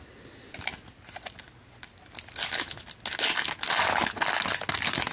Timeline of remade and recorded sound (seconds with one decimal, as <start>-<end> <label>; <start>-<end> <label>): 0.0-5.1 recorded